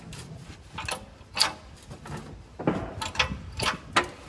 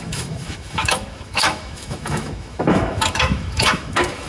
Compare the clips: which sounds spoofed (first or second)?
second